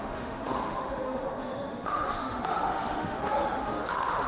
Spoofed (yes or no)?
yes